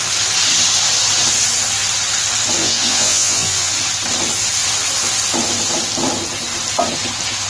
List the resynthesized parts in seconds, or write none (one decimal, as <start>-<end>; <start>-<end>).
2.6-3.7